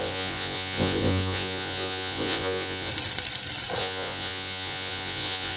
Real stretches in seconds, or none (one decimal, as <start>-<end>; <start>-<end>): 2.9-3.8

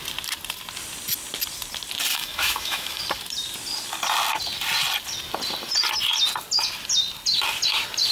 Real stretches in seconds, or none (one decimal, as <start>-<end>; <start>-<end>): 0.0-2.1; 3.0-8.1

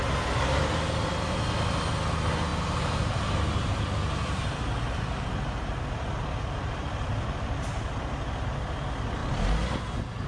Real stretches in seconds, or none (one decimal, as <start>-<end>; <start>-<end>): 0.0-10.3

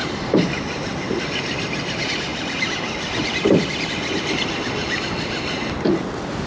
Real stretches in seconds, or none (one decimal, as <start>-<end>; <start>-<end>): 1.2-6.5

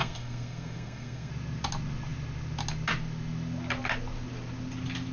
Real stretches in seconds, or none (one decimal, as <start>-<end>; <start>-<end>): 1.3-5.1